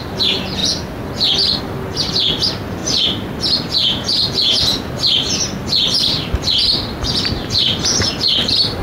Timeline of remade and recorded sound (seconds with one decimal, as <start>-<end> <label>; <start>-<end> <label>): 0.0-3.8 recorded; 3.8-4.9 remade; 4.9-8.8 recorded